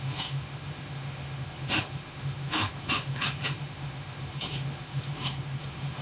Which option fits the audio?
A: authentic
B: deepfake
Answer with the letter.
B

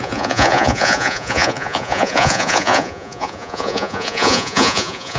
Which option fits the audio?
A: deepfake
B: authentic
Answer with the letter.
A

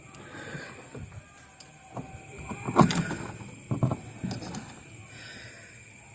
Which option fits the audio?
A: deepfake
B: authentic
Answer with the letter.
B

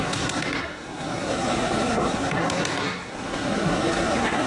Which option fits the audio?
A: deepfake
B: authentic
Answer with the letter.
A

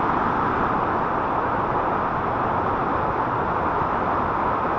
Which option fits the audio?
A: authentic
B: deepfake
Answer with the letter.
A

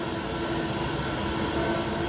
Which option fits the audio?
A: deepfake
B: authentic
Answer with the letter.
B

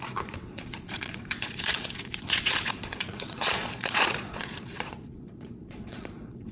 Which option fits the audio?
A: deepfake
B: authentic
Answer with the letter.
A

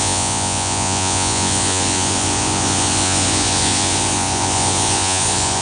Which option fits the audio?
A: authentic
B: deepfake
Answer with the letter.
B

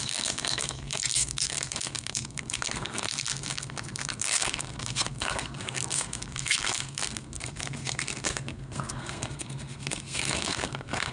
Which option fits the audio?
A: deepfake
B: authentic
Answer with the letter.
A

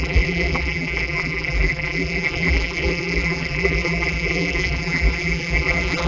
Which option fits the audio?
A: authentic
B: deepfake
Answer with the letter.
B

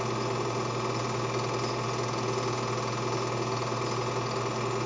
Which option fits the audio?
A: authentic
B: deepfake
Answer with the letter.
A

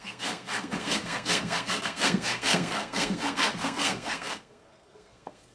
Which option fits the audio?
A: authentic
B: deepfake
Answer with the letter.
B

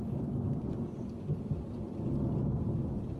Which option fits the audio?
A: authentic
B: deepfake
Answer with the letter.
A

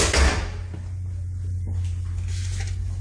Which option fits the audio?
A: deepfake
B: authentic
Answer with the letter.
B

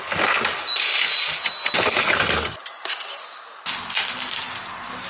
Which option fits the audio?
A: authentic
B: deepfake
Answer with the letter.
A